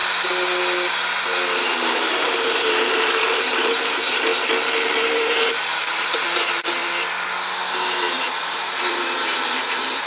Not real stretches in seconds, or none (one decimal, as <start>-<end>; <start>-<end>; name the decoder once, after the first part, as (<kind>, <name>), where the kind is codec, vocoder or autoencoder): 1.6-4.3 (vocoder, BigVGAN v2); 5.0-6.8; 8.1-10.1